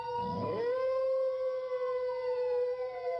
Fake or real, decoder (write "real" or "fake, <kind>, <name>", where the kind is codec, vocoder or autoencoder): real